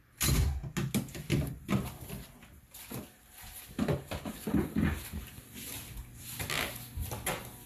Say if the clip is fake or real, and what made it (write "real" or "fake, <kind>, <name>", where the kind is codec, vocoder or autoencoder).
real